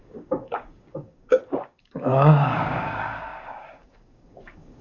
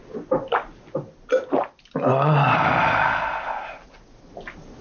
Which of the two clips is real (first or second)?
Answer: second